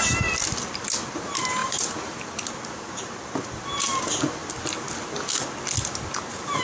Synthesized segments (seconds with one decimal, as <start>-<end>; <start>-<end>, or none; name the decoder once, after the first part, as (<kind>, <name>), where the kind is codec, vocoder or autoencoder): none